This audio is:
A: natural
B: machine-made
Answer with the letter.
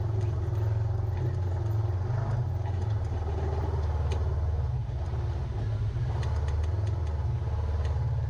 A